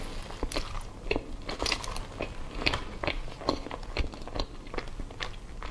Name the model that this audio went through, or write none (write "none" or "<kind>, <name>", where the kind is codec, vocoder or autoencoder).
none